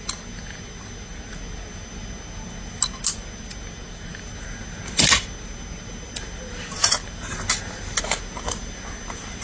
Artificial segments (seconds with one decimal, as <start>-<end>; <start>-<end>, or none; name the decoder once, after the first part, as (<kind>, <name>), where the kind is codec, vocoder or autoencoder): none